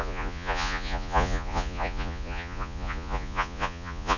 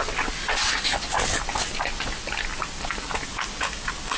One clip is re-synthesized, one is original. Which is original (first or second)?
second